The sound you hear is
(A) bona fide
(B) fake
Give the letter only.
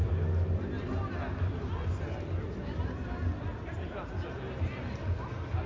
A